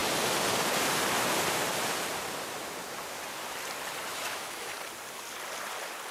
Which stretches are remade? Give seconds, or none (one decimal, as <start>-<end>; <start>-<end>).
4.1-4.7